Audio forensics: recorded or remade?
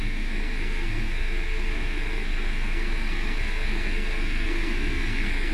remade